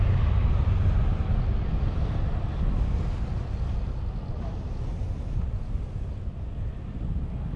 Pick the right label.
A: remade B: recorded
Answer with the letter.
B